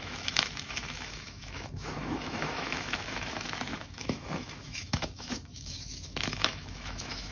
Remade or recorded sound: remade